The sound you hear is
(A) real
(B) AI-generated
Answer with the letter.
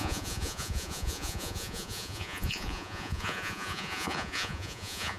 B